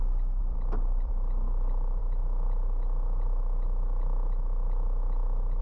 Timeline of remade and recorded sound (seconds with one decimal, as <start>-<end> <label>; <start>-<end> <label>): 0.0-0.4 recorded; 0.4-1.1 remade; 1.1-5.6 recorded